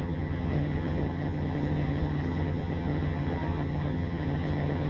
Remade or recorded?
remade